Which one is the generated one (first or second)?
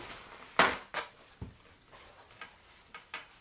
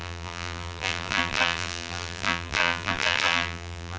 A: second